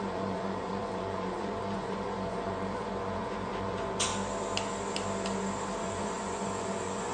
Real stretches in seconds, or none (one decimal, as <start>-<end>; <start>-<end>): 4.1-5.8